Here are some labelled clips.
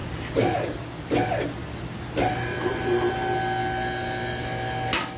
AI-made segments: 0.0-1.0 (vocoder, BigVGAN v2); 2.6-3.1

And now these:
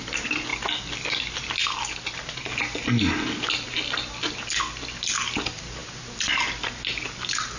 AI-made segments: none

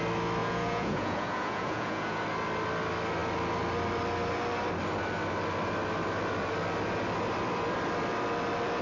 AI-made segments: 0.4-2.2 (vocoder, Vocos)

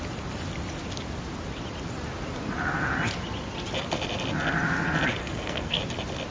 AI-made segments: 5.2-5.8 (codec, SNAC)

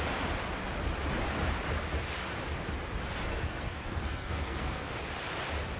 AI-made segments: 3.3-4.9 (codec, SNAC)

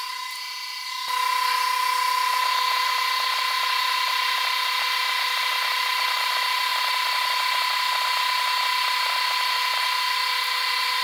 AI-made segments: none

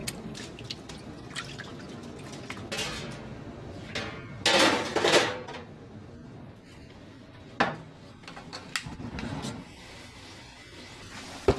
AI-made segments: none

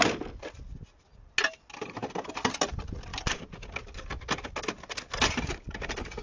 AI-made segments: none